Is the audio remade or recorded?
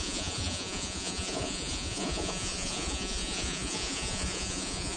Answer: remade